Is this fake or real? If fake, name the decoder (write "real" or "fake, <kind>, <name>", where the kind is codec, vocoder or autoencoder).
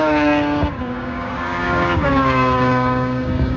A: fake, codec, DAC